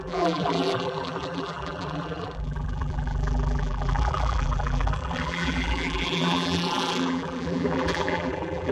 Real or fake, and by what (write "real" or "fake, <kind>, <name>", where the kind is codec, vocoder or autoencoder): fake, vocoder, BigVGAN v2